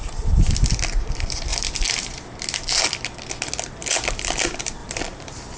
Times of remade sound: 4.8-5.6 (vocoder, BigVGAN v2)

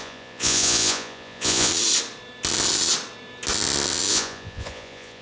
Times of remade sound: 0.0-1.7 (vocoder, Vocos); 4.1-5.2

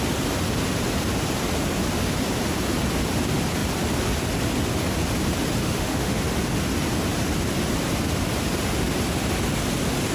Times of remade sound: 5.6-6.2 (autoencoder, DAC-VAE)

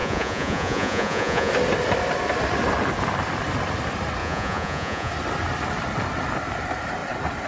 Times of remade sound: 0.0-1.5 (vocoder, Vocos); 4.2-5.1

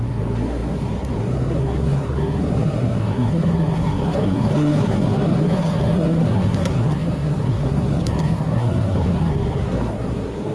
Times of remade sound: 0.0-10.5 (codec, SNAC)